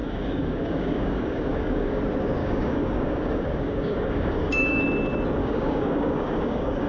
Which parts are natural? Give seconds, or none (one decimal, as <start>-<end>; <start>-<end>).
2.0-2.4; 4.8-5.4